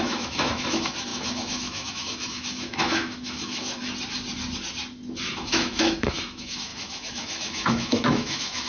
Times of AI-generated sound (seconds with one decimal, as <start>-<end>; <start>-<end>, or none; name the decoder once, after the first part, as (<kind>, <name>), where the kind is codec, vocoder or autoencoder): 0.0-3.8 (autoencoder, DAC-VAE); 5.3-8.7